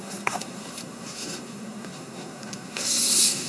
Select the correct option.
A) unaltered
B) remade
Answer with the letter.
B